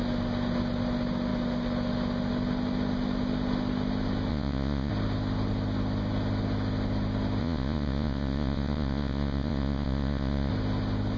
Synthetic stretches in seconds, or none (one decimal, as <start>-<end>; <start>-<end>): 4.3-4.9; 7.4-10.5